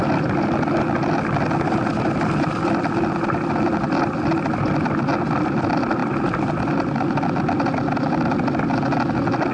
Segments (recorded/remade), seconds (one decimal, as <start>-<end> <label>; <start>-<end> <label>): 0.0-9.5 recorded